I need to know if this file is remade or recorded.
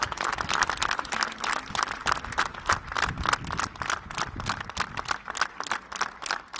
recorded